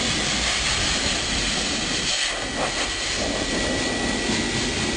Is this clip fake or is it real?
real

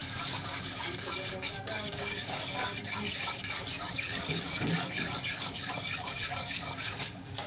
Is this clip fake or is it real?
fake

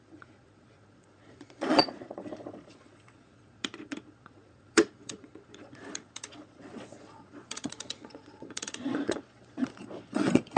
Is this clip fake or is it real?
fake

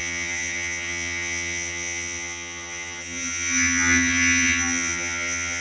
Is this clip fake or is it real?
fake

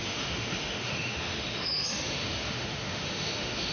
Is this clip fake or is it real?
fake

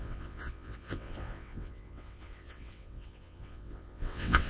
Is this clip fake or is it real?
fake